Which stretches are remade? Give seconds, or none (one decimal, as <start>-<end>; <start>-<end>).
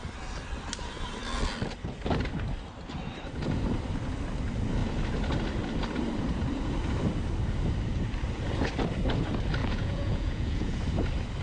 9.6-10.8